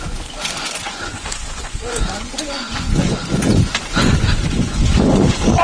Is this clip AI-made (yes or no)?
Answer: yes